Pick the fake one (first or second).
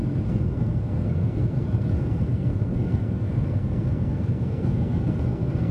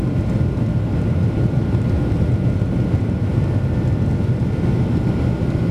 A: first